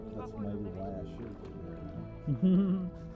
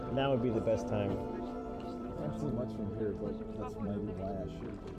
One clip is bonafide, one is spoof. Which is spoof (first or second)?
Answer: second